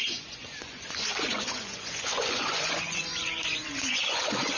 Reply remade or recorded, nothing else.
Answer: remade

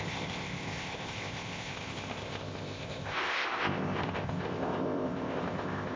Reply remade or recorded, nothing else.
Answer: remade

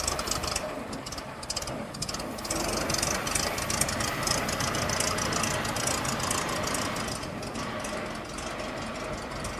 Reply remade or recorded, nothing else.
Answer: recorded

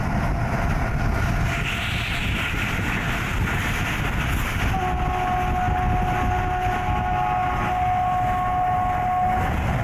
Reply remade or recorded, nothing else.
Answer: recorded